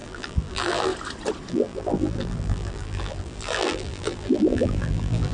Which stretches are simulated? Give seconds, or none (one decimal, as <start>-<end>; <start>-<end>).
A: 0.0-0.9; 1.5-5.3